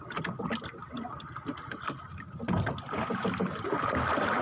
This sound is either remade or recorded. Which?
recorded